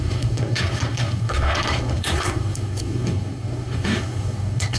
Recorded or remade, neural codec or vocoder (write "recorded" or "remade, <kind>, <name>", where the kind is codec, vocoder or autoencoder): remade, codec, SNAC